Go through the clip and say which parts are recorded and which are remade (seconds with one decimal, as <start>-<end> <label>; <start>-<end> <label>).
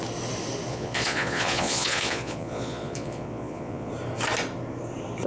0.0-0.7 recorded; 0.7-3.9 remade; 3.9-5.3 recorded